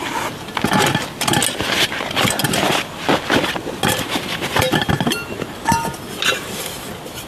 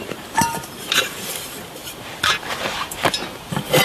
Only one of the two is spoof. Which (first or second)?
second